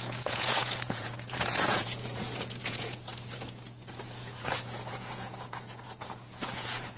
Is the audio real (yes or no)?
no